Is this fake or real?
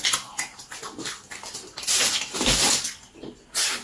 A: real